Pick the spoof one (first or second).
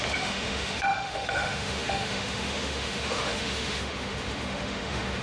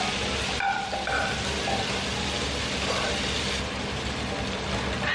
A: first